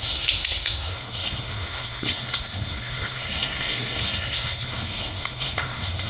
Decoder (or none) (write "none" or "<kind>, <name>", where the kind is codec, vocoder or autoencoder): codec, SNAC